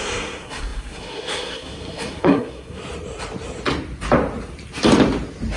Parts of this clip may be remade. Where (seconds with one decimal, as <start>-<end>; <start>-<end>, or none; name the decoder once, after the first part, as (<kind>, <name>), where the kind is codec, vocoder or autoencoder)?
0.0-2.8 (codec, SNAC)